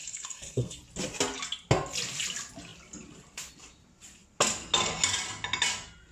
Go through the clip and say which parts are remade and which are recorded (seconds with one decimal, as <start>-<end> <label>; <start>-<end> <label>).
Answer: 0.0-0.8 remade; 0.8-6.1 recorded